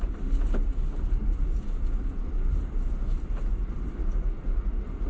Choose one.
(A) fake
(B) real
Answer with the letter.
B